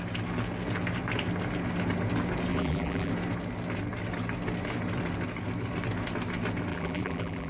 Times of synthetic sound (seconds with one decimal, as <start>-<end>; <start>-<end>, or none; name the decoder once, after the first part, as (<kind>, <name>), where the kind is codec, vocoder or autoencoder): 2.5-3.1 (vocoder, BigVGAN v2); 6.7-7.5